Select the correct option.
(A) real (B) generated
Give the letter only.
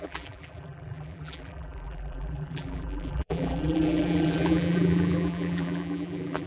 B